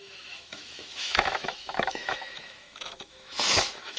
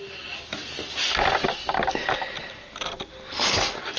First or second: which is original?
second